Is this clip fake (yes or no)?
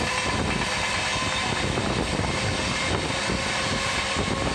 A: no